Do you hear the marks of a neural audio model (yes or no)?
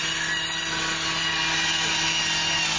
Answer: no